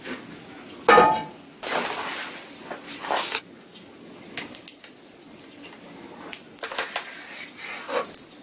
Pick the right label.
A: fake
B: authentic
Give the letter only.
B